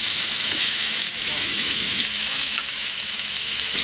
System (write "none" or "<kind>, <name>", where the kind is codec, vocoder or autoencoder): autoencoder, DAC-VAE